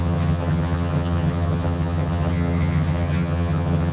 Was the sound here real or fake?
fake